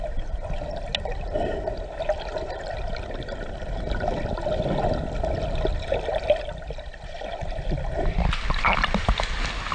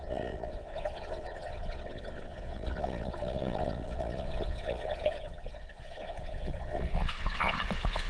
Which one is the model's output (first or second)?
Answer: second